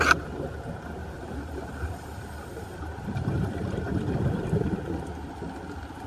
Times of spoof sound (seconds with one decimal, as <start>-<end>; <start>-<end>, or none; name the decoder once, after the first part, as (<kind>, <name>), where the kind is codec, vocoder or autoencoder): 1.0-4.7 (vocoder, BigVGAN v2)